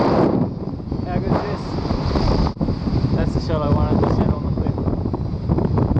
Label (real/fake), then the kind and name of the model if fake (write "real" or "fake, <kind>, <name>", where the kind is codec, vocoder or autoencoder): fake, vocoder, BigVGAN v2